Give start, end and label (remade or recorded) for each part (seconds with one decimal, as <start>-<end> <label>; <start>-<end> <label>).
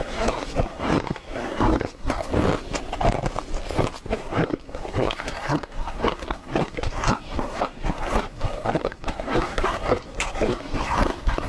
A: 0.0-2.3 remade; 2.3-4.1 recorded; 4.1-11.5 remade